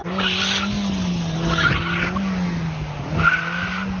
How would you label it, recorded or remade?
recorded